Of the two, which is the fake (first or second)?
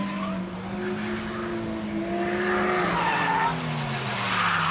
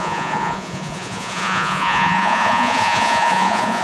second